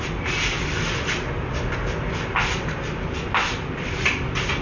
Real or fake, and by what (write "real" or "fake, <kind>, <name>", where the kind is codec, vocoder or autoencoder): fake, vocoder, BigVGAN v2